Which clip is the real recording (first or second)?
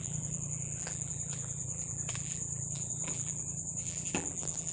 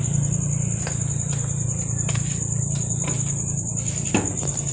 second